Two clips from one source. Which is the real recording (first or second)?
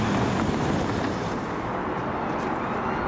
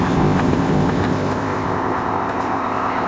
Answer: first